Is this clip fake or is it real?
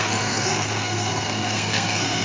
fake